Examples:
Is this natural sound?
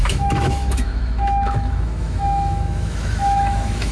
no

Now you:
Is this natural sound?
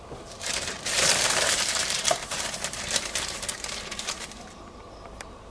no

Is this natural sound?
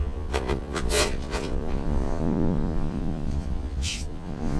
no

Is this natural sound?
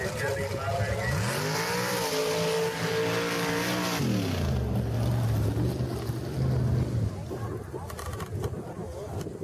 yes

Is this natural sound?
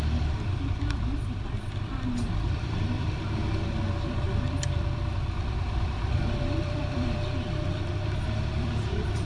no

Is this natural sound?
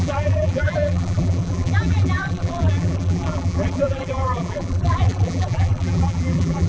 no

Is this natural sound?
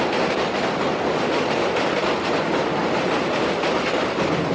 yes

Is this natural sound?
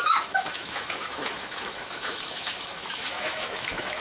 no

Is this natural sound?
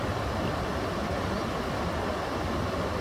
yes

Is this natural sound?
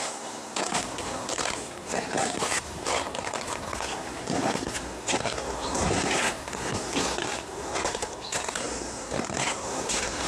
no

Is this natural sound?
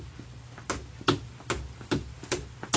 yes